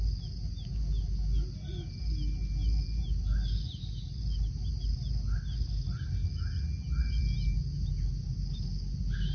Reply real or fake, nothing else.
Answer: real